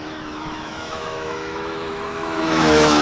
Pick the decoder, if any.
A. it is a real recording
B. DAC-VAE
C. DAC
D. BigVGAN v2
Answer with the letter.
B